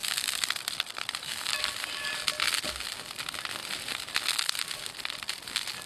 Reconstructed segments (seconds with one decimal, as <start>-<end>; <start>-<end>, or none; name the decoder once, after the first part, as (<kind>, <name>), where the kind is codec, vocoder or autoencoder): 0.0-2.2 (vocoder, BigVGAN v2); 3.6-4.2